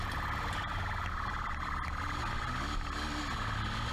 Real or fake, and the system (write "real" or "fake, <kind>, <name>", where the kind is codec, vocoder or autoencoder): real